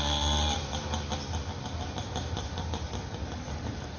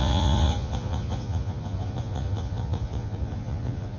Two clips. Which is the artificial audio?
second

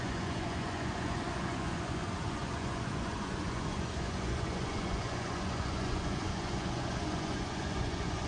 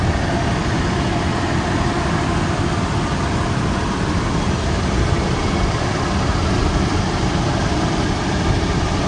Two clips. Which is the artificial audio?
first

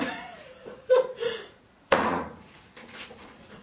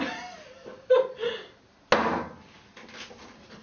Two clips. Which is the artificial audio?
first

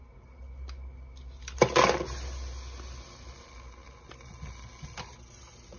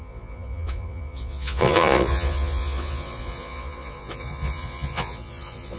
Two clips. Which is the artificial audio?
second